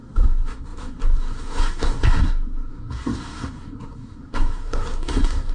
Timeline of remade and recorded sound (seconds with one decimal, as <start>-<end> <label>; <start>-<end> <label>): 0.0-5.5 remade